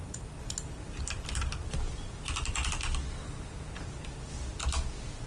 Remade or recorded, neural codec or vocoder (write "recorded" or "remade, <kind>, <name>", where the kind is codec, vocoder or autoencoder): recorded